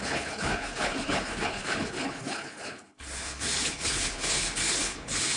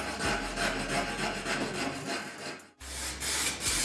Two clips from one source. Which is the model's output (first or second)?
first